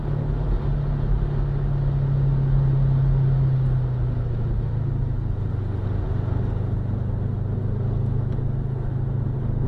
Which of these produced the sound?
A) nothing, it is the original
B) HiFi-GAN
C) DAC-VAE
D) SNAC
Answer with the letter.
A